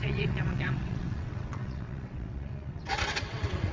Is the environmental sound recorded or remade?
remade